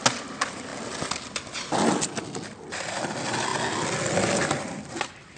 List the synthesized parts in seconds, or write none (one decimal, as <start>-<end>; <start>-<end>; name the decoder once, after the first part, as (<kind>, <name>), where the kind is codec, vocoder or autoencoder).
none